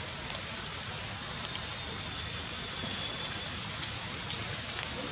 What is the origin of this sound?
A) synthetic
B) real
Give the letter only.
B